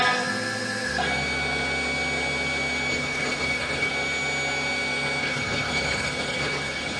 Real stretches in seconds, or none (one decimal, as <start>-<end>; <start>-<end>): 0.0-2.9; 3.9-5.2